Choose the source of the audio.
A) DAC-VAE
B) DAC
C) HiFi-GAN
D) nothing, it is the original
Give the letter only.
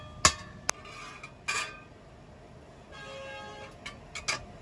D